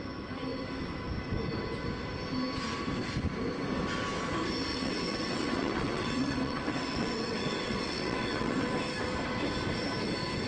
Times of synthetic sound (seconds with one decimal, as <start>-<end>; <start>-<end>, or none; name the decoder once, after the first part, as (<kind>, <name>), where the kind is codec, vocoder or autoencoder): 4.7-8.7 (vocoder, WaveNeXt)